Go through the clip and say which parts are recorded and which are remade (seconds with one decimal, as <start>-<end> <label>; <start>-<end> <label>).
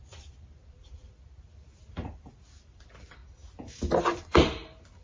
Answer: 0.0-3.2 remade; 3.2-4.0 recorded; 4.0-5.0 remade